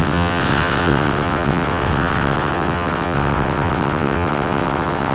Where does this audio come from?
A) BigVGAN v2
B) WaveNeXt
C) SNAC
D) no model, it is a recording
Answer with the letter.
B